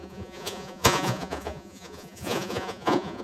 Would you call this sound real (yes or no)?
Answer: no